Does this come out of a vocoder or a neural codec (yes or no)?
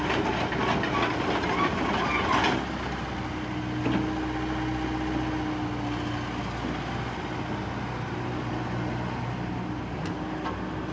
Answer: no